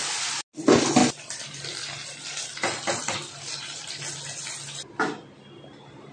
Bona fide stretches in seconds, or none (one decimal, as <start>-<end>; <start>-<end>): 0.0-1.0; 3.9-6.1